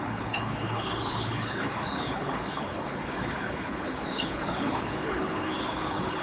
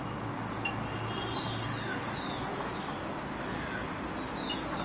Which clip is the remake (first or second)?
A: first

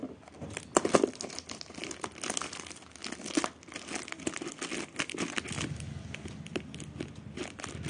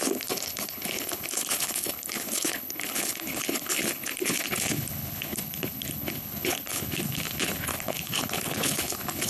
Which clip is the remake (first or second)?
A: second